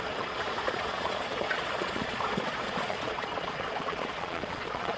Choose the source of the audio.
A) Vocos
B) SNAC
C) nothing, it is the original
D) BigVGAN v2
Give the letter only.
A